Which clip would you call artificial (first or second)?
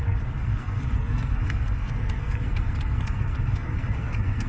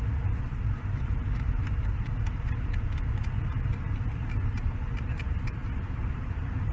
first